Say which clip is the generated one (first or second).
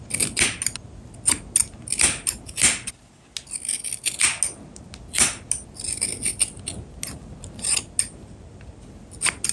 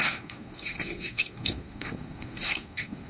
second